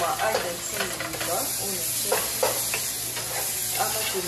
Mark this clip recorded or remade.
recorded